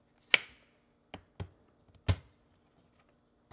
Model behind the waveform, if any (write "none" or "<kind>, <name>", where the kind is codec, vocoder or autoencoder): none